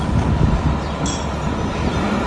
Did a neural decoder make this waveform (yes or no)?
no